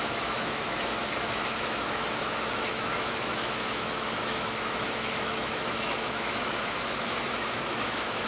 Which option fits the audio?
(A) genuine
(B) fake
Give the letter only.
B